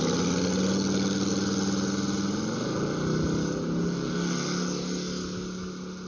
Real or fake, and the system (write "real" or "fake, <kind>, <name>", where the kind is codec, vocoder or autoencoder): real